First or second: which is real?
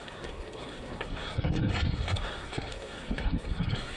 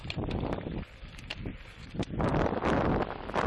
second